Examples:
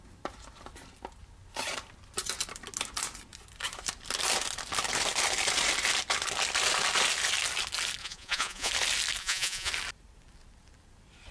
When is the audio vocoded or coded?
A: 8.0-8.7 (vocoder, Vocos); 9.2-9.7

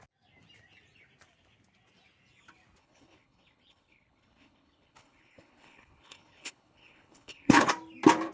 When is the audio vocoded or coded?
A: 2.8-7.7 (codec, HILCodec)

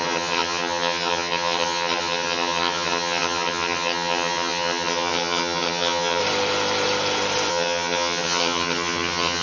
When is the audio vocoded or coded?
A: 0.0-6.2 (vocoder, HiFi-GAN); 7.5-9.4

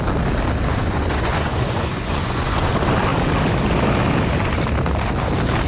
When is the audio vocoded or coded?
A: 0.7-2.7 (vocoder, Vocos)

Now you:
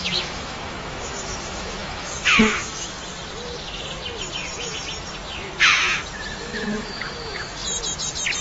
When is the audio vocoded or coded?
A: 0.0-3.0 (autoencoder, DAC-VAE); 6.4-7.6

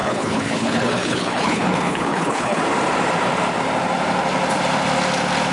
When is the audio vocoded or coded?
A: 0.0-2.6 (codec, HILCodec)

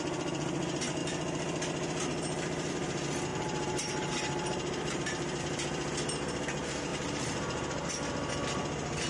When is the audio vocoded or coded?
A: 3.3-5.4 (vocoder, BigVGAN v2); 6.9-7.9